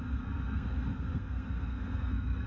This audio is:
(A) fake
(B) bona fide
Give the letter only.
A